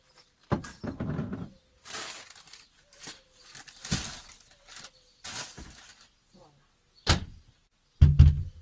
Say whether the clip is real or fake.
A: real